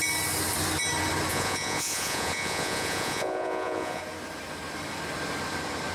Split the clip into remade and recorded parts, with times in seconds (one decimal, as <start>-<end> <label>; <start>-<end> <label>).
0.0-1.3 recorded; 1.3-4.0 remade; 4.0-5.9 recorded